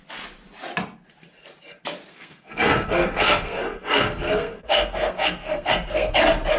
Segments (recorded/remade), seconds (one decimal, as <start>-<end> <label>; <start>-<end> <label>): 0.0-2.1 recorded; 2.1-6.1 remade; 6.1-6.6 recorded